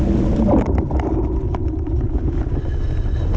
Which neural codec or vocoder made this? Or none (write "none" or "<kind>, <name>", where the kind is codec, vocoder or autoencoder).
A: none